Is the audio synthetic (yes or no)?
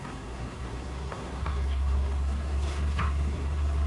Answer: yes